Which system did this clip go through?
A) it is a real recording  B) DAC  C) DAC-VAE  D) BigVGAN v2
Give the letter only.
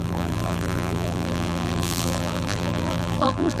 D